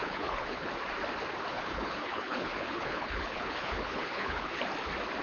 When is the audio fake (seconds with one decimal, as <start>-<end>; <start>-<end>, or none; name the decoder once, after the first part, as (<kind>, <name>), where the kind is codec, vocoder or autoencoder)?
0.0-0.7 (codec, HILCodec); 1.5-4.6